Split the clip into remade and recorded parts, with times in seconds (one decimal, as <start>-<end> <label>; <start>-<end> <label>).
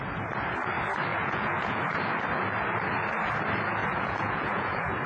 0.0-1.1 recorded; 1.1-1.8 remade; 1.8-3.8 recorded; 3.8-5.1 remade